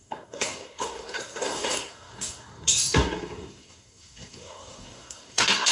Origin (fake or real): fake